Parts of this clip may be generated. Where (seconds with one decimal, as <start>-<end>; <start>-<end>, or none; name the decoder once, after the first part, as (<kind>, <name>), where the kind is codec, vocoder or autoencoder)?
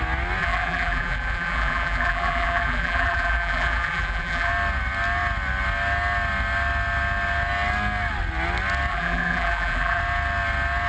0.4-4.5 (vocoder, BigVGAN v2); 8.9-10.0